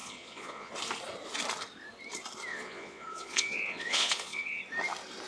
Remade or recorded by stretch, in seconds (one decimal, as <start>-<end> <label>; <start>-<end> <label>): 0.0-0.7 remade; 0.7-2.5 recorded; 2.5-4.6 remade; 4.6-5.3 recorded